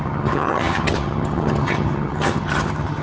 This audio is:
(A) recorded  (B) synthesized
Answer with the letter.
B